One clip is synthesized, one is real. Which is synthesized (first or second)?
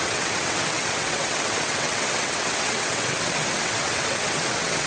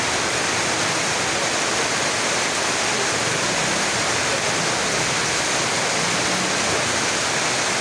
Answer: first